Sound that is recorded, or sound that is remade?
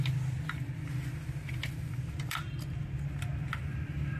recorded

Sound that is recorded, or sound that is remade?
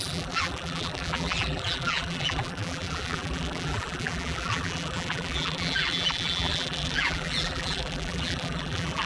remade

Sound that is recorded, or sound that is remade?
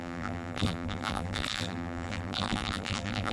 remade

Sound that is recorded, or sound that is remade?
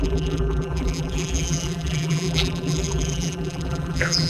remade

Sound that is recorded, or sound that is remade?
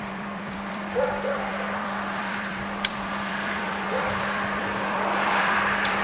remade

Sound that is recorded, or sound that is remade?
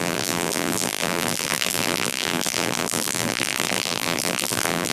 remade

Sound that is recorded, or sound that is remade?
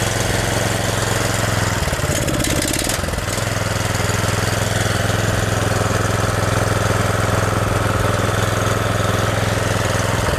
recorded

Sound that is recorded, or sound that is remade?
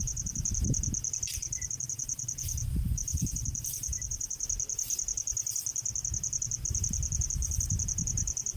remade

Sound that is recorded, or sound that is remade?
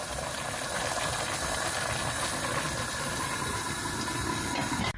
recorded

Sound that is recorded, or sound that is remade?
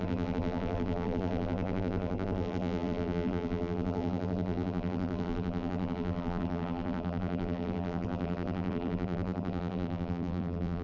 remade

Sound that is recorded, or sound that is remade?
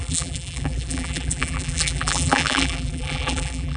remade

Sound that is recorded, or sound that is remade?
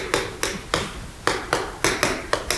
recorded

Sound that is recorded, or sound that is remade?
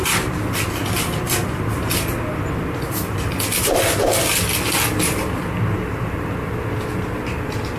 recorded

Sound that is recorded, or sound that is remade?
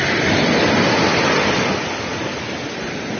recorded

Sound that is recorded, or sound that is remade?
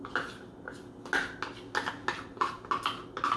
recorded